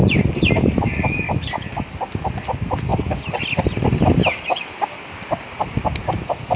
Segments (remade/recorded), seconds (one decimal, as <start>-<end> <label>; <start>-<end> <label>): 0.0-6.6 recorded